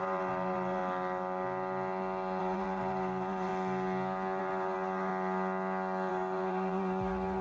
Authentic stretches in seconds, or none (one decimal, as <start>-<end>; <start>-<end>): 0.8-2.4; 3.5-4.4; 5.1-6.1